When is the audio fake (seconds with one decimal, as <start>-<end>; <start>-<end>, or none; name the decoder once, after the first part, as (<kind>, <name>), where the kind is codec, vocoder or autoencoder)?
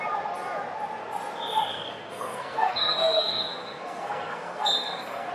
1.7-5.3 (codec, SNAC)